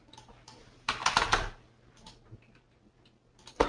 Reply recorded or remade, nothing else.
recorded